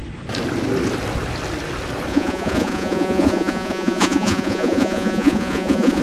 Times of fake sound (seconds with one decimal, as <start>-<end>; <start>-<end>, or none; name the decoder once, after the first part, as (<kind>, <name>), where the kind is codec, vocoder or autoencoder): 2.1-6.0 (vocoder, Vocos)